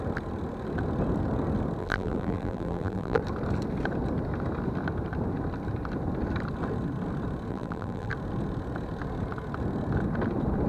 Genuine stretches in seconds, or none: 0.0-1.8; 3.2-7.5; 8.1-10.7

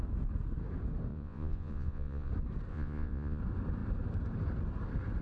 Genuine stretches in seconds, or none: 0.0-1.1; 2.3-2.7; 3.4-5.2

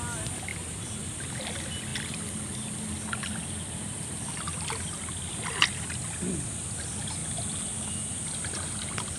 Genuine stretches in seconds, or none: 0.0-1.9; 5.0-7.2; 7.9-9.2